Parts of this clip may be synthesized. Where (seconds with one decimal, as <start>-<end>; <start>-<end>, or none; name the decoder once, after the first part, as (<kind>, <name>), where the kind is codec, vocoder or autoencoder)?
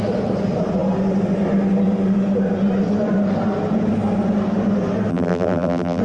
5.1-6.0 (vocoder, BigVGAN v2)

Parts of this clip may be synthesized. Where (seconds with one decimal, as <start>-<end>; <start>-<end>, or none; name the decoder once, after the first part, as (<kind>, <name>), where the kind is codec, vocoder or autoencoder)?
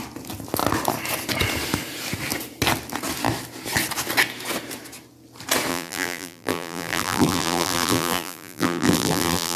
5.7-9.6 (vocoder, BigVGAN v2)